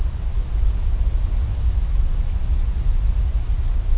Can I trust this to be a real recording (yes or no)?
yes